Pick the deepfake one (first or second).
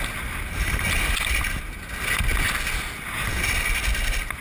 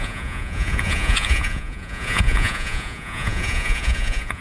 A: second